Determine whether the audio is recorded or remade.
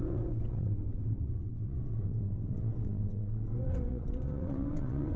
remade